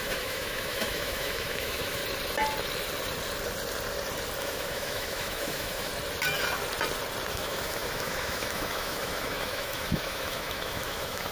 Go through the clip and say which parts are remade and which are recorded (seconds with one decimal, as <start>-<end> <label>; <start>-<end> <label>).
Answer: 0.0-2.0 remade; 2.0-4.4 recorded; 4.4-5.9 remade; 5.9-7.3 recorded; 7.3-11.3 remade